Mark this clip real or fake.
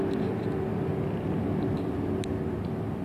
real